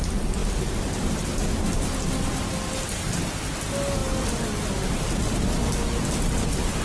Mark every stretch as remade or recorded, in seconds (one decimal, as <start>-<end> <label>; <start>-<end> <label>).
0.0-6.8 recorded